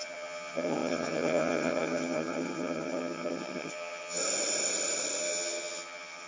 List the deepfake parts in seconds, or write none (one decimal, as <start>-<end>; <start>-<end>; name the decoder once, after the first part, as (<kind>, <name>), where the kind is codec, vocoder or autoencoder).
0.0-4.2 (vocoder, HiFi-GAN); 5.2-6.3